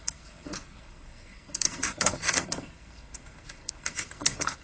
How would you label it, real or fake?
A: fake